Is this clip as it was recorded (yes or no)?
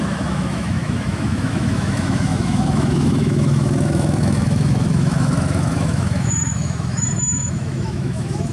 no